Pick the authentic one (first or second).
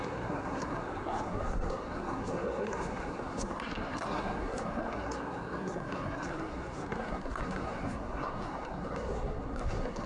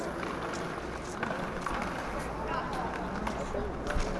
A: second